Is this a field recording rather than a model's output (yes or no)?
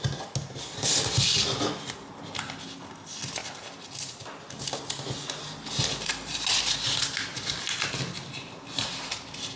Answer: yes